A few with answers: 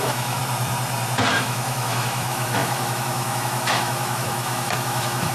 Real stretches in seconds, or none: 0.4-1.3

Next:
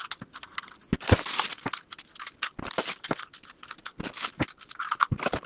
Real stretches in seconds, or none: 0.0-5.5

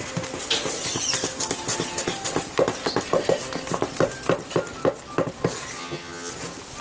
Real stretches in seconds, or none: 0.0-5.8; 6.3-6.8

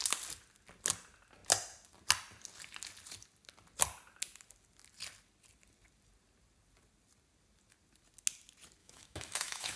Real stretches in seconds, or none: 0.0-8.8

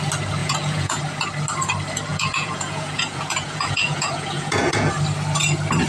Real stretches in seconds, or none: 0.0-0.4; 1.0-2.1; 4.9-5.9

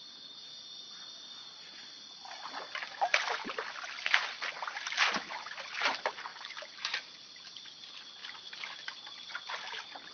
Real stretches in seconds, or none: 0.0-6.3; 7.4-8.2; 9.5-10.1